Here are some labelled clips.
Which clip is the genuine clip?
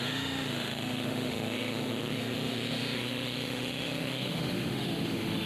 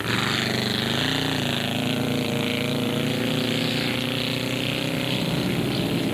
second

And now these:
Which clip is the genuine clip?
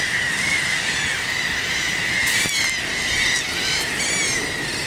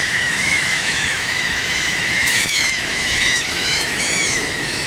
first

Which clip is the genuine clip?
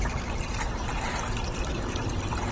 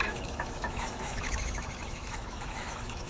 first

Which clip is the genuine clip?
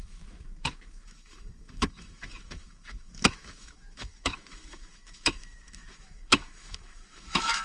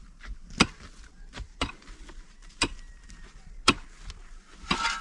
second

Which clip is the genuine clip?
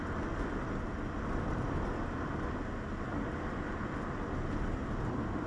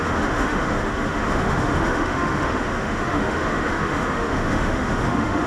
first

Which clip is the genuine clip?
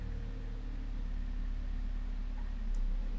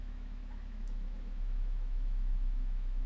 first